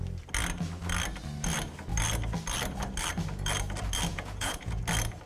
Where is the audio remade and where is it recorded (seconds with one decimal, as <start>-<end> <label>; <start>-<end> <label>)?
0.0-4.1 recorded; 4.1-4.8 remade; 4.8-5.3 recorded